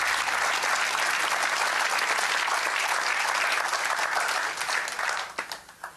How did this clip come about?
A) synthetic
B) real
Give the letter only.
B